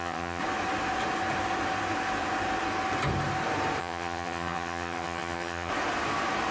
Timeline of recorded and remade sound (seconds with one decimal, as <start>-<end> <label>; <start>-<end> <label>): 0.0-0.4 remade; 0.4-3.8 recorded; 3.8-5.7 remade; 5.7-6.5 recorded